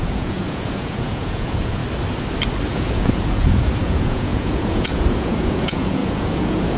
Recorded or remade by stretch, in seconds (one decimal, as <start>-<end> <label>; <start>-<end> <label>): 0.0-1.8 remade; 1.8-2.7 recorded; 2.7-6.8 remade

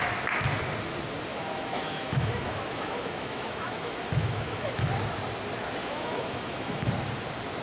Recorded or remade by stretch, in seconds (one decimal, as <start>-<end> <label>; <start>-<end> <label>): 0.0-1.3 recorded; 1.3-4.9 remade; 4.9-5.8 recorded; 5.8-6.9 remade; 6.9-7.6 recorded

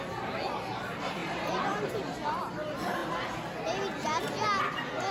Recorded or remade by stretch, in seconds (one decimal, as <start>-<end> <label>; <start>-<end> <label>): 0.0-1.2 recorded; 1.2-2.4 remade; 2.4-5.1 recorded

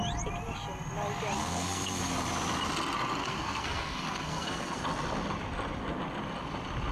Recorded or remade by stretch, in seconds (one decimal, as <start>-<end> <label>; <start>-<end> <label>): 0.0-1.4 recorded; 1.4-2.0 remade; 2.0-3.2 recorded; 3.2-4.8 remade; 4.8-6.9 recorded

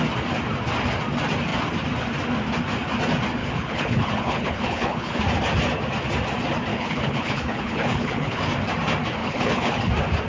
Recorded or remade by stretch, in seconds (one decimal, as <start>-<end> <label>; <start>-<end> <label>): 0.0-3.4 recorded; 3.4-5.2 remade; 5.2-6.7 recorded; 6.7-8.4 remade; 8.4-9.2 recorded; 9.2-9.9 remade; 9.9-10.3 recorded

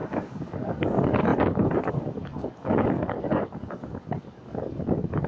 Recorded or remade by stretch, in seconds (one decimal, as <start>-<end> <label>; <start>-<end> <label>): 0.0-5.3 remade